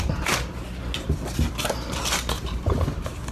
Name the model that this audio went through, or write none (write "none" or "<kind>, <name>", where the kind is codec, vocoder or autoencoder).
none